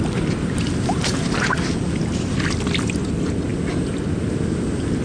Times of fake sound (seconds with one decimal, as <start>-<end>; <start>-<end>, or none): none